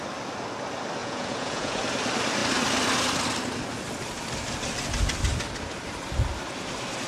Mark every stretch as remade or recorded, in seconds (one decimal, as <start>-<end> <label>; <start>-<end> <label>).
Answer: 0.0-1.0 recorded; 1.0-1.8 remade; 1.8-7.1 recorded